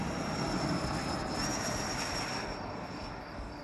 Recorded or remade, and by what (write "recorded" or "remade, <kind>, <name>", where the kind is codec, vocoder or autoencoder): recorded